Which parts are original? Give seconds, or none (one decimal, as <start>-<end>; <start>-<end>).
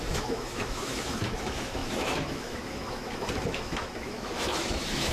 none